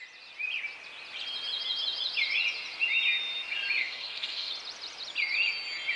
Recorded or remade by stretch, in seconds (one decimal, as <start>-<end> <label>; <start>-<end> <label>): 0.0-3.8 recorded; 3.8-4.5 remade; 4.5-6.0 recorded